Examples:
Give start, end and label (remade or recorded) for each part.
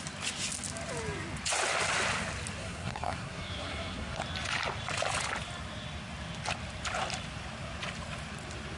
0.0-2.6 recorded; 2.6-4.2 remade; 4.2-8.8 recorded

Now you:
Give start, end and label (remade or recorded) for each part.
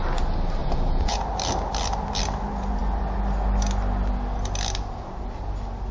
0.0-0.6 recorded; 0.6-1.2 remade; 1.2-5.9 recorded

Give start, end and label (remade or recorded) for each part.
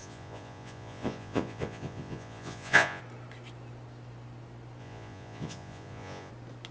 0.0-3.0 remade; 3.0-4.8 recorded; 4.8-6.3 remade; 6.3-6.7 recorded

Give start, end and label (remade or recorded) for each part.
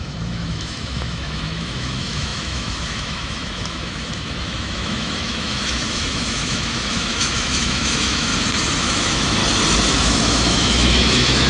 0.0-8.3 remade; 8.3-8.8 recorded; 8.8-9.4 remade; 9.4-10.0 recorded; 10.0-11.5 remade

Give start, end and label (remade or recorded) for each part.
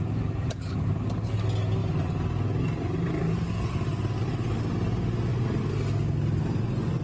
0.0-7.0 recorded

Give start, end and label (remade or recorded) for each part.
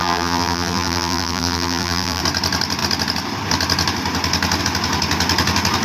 0.0-2.2 remade; 2.2-5.8 recorded